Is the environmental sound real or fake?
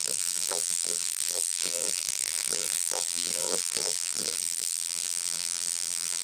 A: fake